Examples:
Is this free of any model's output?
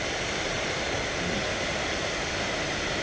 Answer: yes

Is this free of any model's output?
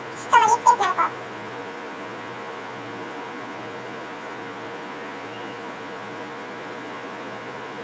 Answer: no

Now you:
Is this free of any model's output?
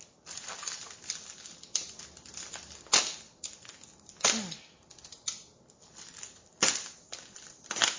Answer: yes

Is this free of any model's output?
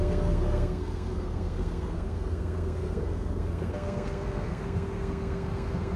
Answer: no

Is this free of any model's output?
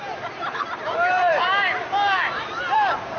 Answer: no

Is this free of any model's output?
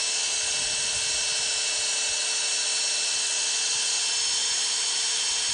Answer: yes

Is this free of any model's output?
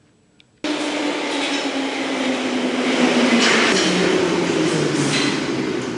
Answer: yes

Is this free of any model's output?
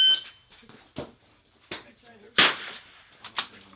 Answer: yes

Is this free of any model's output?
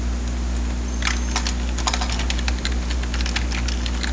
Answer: yes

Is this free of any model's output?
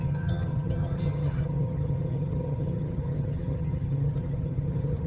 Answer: no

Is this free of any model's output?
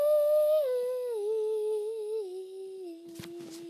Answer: yes